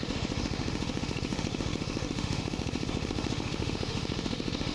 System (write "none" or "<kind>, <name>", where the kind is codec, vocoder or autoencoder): autoencoder, DAC-VAE